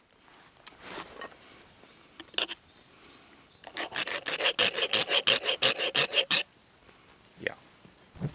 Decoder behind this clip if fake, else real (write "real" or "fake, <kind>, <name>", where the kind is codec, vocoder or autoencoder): real